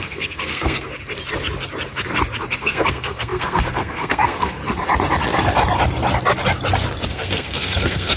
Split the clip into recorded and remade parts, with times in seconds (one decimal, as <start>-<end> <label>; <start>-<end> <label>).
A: 0.0-0.9 remade; 0.9-2.6 recorded; 2.6-4.6 remade; 4.6-7.1 recorded; 7.1-8.2 remade